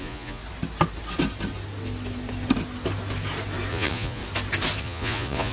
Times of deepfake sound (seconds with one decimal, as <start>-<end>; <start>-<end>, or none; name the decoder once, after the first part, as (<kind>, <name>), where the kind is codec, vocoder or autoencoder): 0.0-0.4 (vocoder, Vocos); 3.7-4.2; 4.8-5.5